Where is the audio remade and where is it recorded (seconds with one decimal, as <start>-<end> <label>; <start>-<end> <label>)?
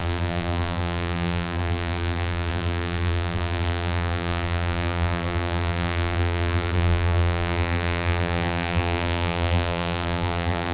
0.0-10.7 remade